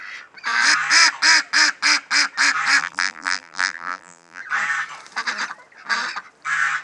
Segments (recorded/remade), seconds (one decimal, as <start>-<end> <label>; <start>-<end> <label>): 0.0-2.8 recorded; 2.8-4.4 remade; 4.4-6.8 recorded